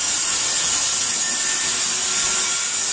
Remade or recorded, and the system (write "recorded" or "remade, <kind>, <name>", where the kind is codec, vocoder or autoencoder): recorded